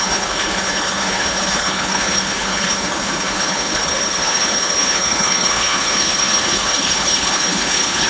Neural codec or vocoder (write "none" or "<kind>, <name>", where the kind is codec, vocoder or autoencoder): codec, HILCodec